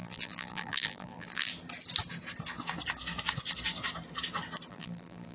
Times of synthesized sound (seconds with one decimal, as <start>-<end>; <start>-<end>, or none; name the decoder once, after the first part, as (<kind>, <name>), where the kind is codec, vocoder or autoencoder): 0.0-1.5 (vocoder, BigVGAN v2); 4.7-5.3